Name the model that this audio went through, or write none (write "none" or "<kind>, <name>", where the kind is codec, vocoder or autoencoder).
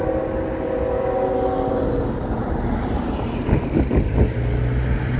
none